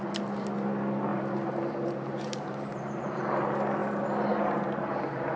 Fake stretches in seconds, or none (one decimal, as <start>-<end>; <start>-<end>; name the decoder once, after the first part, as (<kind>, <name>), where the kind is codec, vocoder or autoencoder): 1.1-3.2 (vocoder, BigVGAN v2); 3.8-5.4